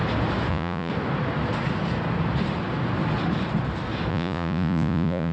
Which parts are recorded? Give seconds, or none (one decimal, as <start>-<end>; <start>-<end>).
0.0-0.5; 0.9-4.1